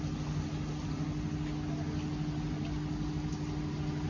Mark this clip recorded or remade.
recorded